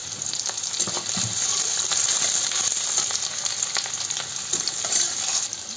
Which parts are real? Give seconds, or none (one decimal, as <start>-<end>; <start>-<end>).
0.0-5.8